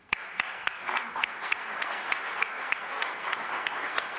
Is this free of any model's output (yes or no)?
no